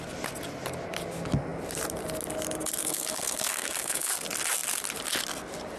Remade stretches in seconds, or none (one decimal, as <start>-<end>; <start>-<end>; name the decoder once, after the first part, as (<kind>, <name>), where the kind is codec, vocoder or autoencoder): 2.8-4.1 (codec, SNAC)